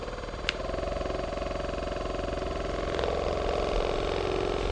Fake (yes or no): no